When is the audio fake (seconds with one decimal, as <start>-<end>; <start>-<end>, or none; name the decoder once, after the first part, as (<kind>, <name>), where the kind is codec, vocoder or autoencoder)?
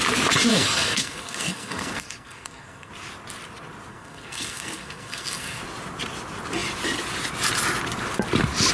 0.5-2.9 (codec, SNAC); 3.9-5.6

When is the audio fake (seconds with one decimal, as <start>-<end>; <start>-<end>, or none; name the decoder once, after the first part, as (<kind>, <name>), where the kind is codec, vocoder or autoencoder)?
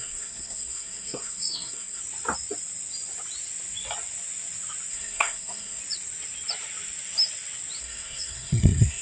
0.0-2.0 (codec, SNAC); 4.9-5.8; 7.8-9.0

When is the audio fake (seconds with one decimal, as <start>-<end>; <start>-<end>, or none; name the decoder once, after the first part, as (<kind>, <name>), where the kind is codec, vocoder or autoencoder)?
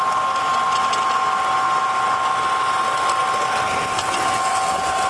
none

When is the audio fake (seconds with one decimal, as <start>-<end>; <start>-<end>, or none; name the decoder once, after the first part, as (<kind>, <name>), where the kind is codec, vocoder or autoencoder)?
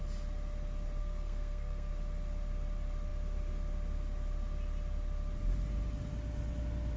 1.0-1.9 (codec, SNAC)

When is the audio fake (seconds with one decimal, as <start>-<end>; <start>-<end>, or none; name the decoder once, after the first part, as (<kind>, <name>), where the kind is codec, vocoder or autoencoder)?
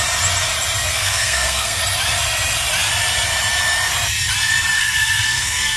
0.9-1.8 (codec, SNAC); 4.8-5.8